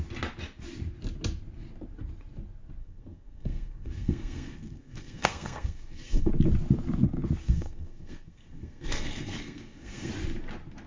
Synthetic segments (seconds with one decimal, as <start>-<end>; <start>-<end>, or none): 2.8-6.3; 7.4-10.1